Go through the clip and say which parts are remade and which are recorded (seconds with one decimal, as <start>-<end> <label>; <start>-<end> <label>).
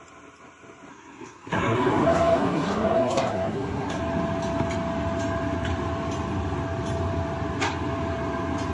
0.0-0.9 recorded; 0.9-4.0 remade; 4.0-8.7 recorded